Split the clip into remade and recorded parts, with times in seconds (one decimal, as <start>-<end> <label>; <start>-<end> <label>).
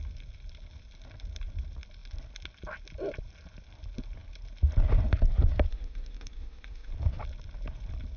0.0-5.7 recorded; 5.7-6.9 remade; 6.9-8.2 recorded